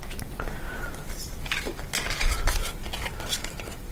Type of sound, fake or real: real